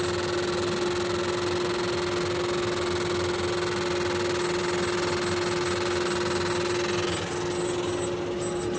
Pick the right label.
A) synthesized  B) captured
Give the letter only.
B